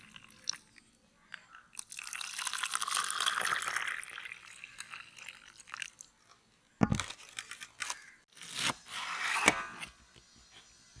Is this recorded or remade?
recorded